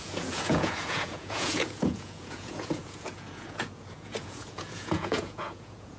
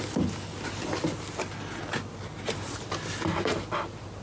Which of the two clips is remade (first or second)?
first